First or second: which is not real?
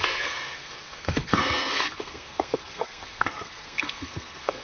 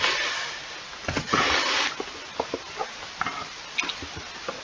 first